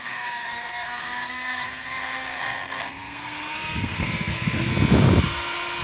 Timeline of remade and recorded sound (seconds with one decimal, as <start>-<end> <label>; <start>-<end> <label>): 0.0-4.7 remade; 4.7-5.2 recorded; 5.2-5.8 remade